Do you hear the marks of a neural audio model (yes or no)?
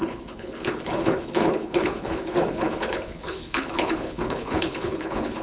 yes